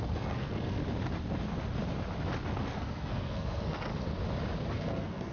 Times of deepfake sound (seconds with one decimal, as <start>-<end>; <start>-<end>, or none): 0.0-0.8; 2.5-3.9; 4.7-5.3